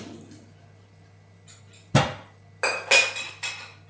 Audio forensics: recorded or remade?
recorded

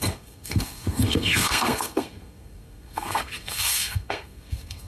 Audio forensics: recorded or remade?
remade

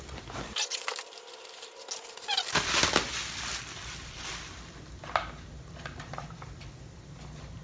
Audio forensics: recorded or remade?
recorded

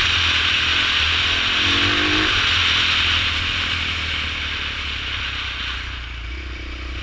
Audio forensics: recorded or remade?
recorded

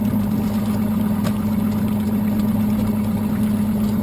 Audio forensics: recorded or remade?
recorded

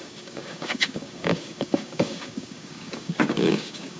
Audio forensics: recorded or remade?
remade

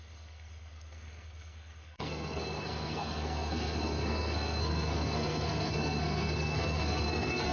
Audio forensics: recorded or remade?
remade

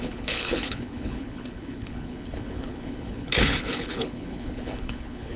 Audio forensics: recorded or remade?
remade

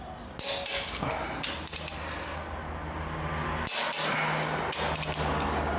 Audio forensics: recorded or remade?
recorded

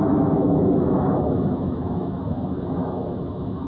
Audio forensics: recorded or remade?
remade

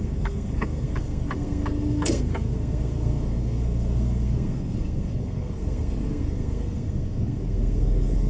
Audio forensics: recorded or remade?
remade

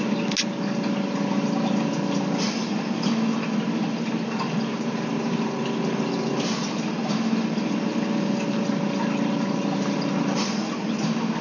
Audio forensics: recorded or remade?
recorded